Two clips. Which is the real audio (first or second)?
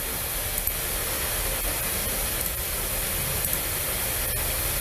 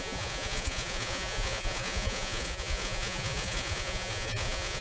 first